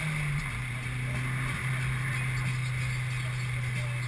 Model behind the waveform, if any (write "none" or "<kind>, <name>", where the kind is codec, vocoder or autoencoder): none